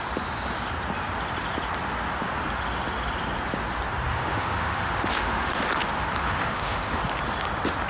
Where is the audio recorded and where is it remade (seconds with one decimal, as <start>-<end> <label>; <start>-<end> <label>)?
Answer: 0.0-4.1 recorded; 4.1-5.7 remade; 5.7-6.2 recorded; 6.2-7.0 remade; 7.0-7.9 recorded